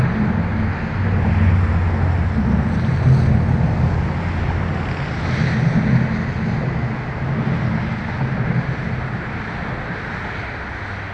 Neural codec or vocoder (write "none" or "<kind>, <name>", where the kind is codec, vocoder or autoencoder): none